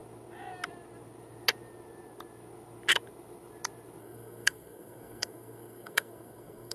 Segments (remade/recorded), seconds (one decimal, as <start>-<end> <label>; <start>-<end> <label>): 0.0-4.0 recorded; 4.0-6.7 remade

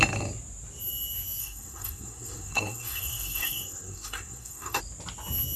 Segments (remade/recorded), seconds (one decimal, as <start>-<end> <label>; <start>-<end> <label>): 0.0-1.4 recorded; 1.4-4.8 remade; 4.8-5.6 recorded

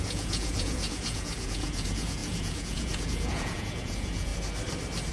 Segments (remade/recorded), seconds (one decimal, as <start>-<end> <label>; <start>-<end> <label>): 0.0-4.3 remade; 4.3-5.1 recorded

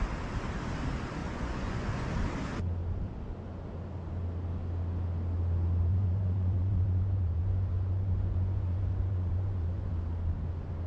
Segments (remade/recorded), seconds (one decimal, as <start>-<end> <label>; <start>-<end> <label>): 0.0-1.2 recorded; 1.2-2.1 remade; 2.1-5.9 recorded; 5.9-9.9 remade; 9.9-10.9 recorded

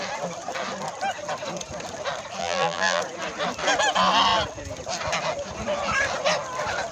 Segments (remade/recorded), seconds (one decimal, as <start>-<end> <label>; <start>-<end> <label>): 0.0-2.4 recorded; 2.4-3.0 remade; 3.0-6.9 recorded